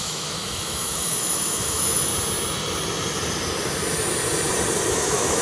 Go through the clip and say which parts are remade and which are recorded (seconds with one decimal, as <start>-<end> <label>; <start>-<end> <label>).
0.0-2.1 remade; 2.1-4.9 recorded; 4.9-5.4 remade